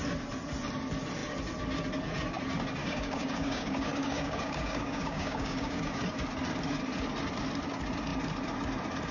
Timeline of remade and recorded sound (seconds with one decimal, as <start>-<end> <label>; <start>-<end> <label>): 0.0-2.8 recorded; 2.8-5.9 remade; 5.9-9.1 recorded